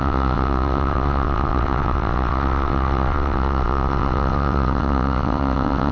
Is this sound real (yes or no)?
no